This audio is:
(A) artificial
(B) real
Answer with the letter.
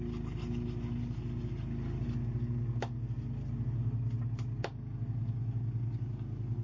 B